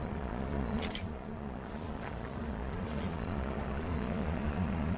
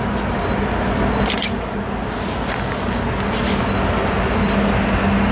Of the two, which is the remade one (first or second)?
first